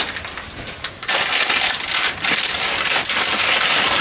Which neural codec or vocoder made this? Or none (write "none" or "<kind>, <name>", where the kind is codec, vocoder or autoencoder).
none